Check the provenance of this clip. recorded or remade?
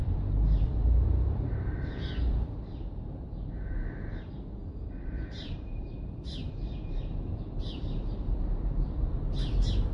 remade